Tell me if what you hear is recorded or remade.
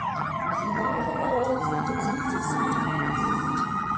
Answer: remade